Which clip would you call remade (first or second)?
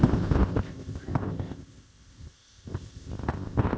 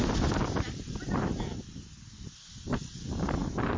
first